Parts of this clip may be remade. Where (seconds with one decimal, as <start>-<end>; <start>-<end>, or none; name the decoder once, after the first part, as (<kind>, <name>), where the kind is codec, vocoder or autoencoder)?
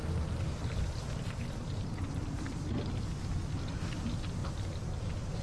none